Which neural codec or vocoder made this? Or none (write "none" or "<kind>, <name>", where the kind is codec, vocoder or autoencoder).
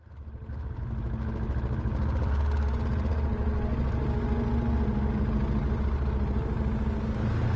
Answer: none